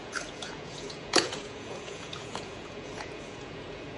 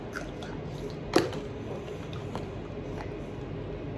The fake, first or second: first